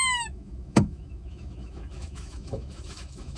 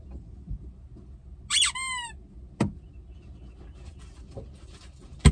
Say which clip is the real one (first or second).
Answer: second